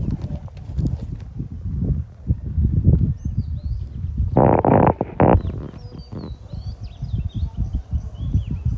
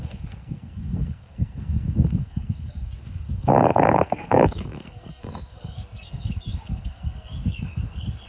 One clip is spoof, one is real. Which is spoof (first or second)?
second